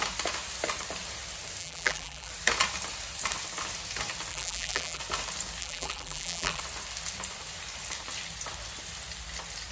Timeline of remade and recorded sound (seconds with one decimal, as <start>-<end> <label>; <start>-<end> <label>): 0.0-1.6 recorded; 1.6-2.3 remade; 2.3-4.3 recorded; 4.3-5.0 remade; 5.0-5.6 recorded; 5.6-6.6 remade; 6.6-9.7 recorded